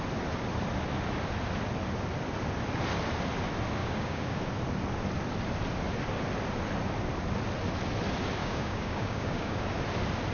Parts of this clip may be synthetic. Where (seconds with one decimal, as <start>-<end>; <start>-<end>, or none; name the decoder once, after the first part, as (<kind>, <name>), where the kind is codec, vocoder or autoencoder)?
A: 3.8-4.4 (codec, DAC); 8.4-9.6